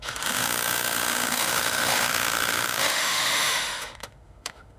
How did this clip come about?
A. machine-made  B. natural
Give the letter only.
A